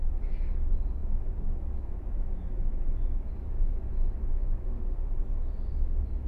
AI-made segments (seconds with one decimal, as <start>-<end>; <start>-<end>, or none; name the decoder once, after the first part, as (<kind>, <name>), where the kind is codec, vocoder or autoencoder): 1.0-3.8 (autoencoder, DAC-VAE); 4.3-4.9